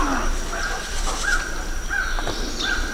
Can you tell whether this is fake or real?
real